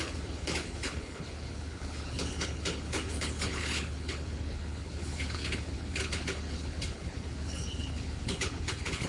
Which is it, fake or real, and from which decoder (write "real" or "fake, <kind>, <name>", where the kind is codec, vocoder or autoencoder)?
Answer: fake, codec, HILCodec